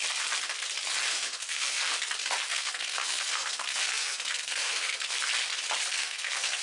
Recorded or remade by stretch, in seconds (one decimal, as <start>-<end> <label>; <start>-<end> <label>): 0.0-1.1 recorded; 1.1-1.9 remade; 1.9-2.5 recorded; 2.5-5.1 remade; 5.1-5.9 recorded; 5.9-6.6 remade